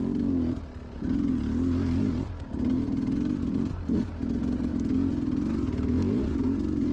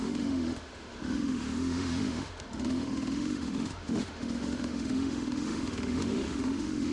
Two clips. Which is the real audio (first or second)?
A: first